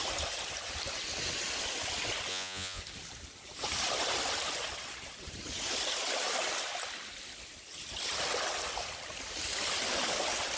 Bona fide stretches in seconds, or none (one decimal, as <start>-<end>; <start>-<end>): 0.0-2.3; 2.8-10.6